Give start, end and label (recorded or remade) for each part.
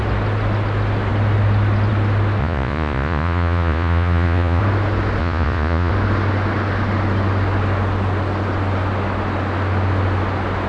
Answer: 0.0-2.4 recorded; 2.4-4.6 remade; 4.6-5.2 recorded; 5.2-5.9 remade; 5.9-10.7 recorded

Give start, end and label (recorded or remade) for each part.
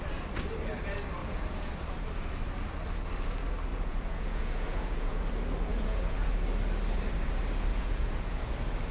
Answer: 0.0-1.2 recorded; 1.2-1.7 remade; 1.7-3.7 recorded; 3.7-5.2 remade; 5.2-5.7 recorded; 5.7-6.3 remade; 6.3-7.7 recorded; 7.7-8.5 remade; 8.5-8.9 recorded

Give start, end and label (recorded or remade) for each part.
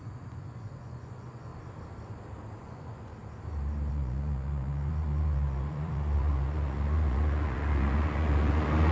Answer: 0.0-1.5 remade; 1.5-2.6 recorded; 2.6-3.1 remade; 3.1-3.9 recorded; 3.9-8.9 remade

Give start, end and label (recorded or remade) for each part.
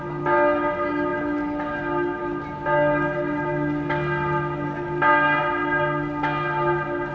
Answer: 0.0-7.1 recorded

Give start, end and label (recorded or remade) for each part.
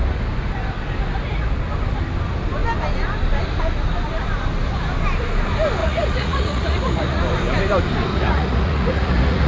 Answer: 0.0-5.8 recorded; 5.8-7.2 remade; 7.2-8.1 recorded; 8.1-9.5 remade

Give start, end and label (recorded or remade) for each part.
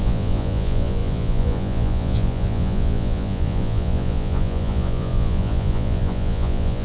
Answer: 0.0-6.8 remade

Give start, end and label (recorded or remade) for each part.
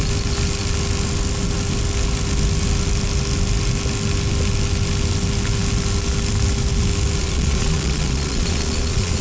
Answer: 0.0-7.2 recorded; 7.2-9.2 remade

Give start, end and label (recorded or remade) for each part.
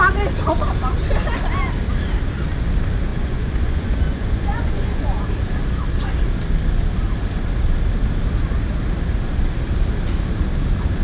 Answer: 0.0-3.1 recorded; 3.1-5.2 remade; 5.2-11.0 recorded